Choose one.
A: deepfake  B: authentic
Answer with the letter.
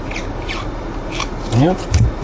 B